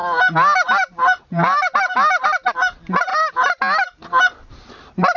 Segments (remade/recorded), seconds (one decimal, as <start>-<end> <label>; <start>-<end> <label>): 0.0-5.2 recorded